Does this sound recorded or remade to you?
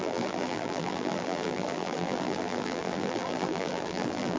remade